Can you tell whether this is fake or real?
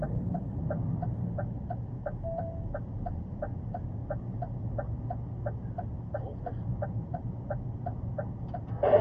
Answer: real